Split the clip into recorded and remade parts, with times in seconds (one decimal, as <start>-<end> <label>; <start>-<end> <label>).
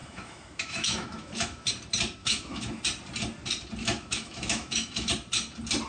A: 0.0-1.7 remade; 1.7-2.2 recorded; 2.2-2.8 remade; 2.8-3.8 recorded; 3.8-5.1 remade; 5.1-5.9 recorded